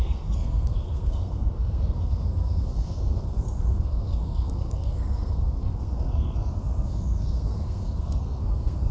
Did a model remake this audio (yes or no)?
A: yes